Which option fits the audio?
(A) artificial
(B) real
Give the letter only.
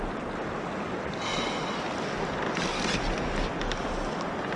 B